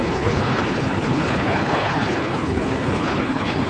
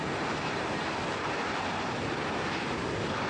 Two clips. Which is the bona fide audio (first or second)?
second